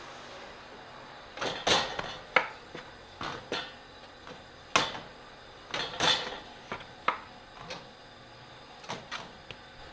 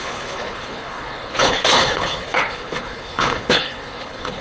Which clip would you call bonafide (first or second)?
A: first